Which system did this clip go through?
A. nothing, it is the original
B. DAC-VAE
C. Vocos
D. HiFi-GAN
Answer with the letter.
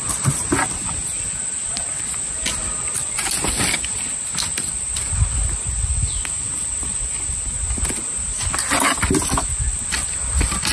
A